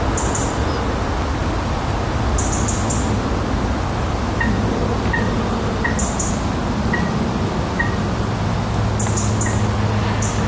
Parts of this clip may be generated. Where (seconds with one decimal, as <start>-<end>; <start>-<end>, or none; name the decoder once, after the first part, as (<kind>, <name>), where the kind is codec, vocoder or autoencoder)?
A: none